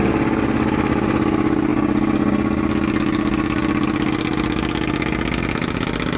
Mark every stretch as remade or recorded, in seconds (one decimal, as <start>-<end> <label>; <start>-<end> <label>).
0.0-6.2 recorded